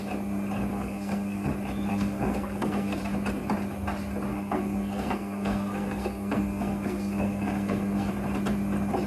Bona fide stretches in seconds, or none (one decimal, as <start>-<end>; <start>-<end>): 0.0-0.7; 1.5-1.9; 3.0-4.3; 8.1-9.1

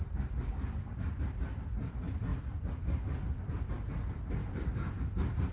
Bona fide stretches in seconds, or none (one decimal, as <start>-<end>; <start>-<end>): 0.0-5.5

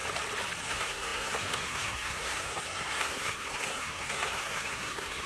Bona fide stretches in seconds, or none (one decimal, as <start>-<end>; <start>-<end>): 0.0-0.6